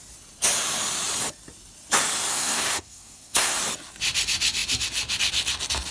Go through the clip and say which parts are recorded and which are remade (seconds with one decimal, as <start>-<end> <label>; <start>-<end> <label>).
0.0-2.3 recorded; 2.3-3.6 remade; 3.6-5.9 recorded